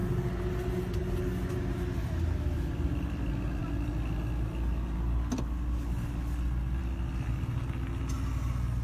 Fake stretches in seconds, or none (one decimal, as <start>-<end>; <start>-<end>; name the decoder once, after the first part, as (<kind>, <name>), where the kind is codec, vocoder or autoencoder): none